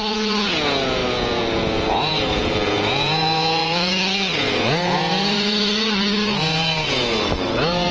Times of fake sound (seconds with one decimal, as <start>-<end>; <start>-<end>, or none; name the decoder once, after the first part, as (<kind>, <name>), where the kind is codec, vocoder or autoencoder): 0.0-7.9 (vocoder, Vocos)